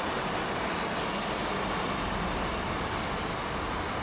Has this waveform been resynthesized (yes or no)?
no